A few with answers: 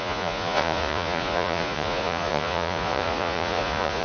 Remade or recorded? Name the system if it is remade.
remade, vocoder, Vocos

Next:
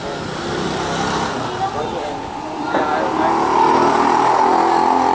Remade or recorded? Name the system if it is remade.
recorded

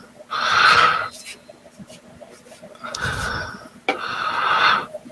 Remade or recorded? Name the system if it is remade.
recorded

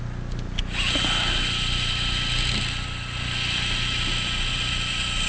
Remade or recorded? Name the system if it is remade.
recorded